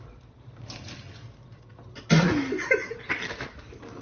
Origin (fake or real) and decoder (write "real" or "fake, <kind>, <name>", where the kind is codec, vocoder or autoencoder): real